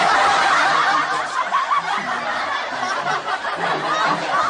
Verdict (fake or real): real